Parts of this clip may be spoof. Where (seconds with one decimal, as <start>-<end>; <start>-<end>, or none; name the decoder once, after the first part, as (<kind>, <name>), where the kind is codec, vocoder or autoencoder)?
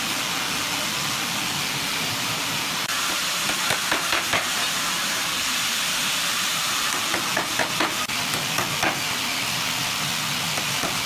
1.9-6.7 (vocoder, BigVGAN v2)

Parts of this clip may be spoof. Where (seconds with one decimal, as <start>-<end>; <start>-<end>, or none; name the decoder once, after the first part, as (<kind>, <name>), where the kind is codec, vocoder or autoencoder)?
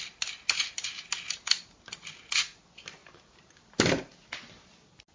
3.0-5.1 (vocoder, BigVGAN v2)